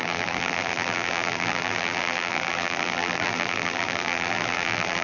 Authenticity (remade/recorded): remade